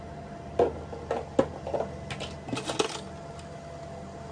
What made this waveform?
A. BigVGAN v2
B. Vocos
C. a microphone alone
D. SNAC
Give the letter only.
C